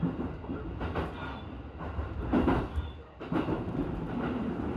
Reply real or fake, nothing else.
real